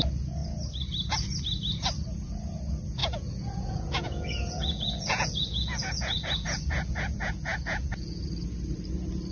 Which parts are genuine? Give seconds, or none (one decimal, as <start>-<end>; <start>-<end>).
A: 0.0-3.0; 8.2-9.3